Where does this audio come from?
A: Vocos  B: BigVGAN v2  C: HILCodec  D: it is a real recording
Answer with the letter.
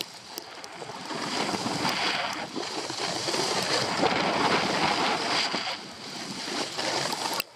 D